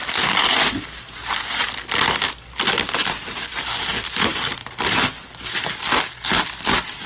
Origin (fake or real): real